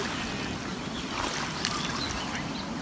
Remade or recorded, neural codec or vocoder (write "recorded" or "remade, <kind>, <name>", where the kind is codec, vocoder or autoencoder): recorded